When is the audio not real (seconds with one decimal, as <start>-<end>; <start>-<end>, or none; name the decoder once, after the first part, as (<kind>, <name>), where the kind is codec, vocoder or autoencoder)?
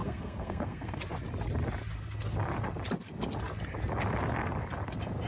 0.0-1.0 (codec, SNAC)